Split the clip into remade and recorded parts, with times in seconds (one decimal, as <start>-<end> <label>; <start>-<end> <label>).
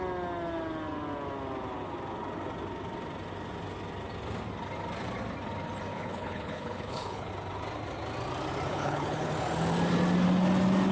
0.0-5.9 recorded; 5.9-7.3 remade; 7.3-8.7 recorded; 8.7-9.3 remade; 9.3-10.9 recorded